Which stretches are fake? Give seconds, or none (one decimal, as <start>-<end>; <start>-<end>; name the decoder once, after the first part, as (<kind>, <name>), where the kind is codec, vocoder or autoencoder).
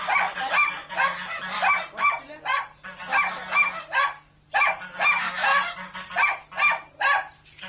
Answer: none